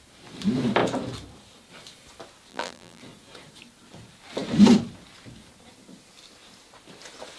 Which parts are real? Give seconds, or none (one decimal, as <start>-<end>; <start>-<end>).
0.0-2.5; 3.0-7.4